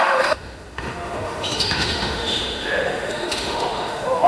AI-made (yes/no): yes